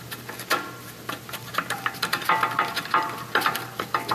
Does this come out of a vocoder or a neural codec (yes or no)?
yes